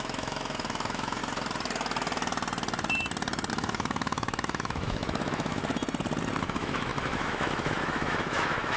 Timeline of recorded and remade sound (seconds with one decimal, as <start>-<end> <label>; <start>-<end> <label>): 0.0-1.2 remade; 1.2-3.5 recorded; 3.5-5.6 remade; 5.6-6.4 recorded; 6.4-8.8 remade